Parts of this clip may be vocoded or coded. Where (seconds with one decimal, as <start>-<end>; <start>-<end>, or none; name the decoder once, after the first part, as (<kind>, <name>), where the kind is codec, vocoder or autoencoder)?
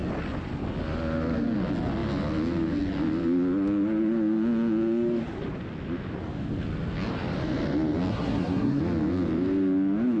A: 8.1-8.8 (codec, SNAC)